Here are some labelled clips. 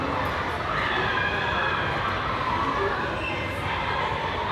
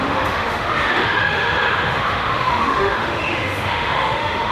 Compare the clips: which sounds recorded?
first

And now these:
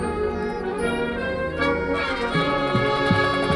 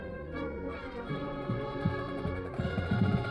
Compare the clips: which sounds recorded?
first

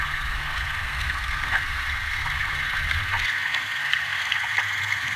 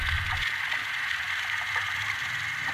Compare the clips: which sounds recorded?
second